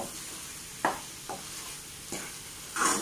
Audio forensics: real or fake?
real